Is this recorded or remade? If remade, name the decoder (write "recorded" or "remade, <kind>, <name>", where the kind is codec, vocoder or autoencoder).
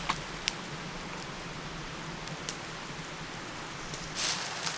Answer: recorded